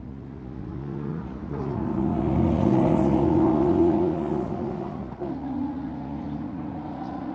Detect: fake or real fake